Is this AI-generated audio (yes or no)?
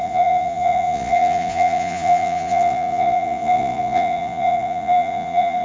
yes